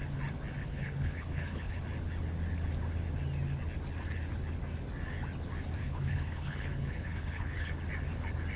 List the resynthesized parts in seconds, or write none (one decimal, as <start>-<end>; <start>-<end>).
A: 0.6-1.8; 5.8-7.7